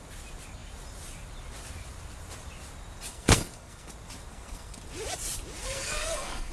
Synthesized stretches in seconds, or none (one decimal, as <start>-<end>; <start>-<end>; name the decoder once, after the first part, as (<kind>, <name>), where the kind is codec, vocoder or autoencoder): 3.1-3.9 (codec, SNAC); 4.3-4.8; 5.6-6.5